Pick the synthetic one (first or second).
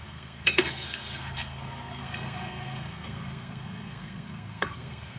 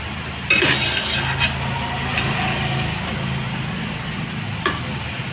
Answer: first